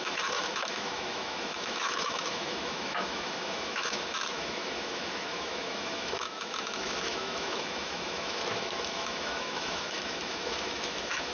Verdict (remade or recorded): remade